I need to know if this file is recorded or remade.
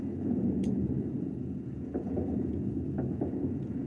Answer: remade